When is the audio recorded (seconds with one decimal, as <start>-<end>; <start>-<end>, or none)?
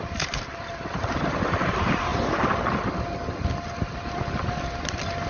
2.1-5.3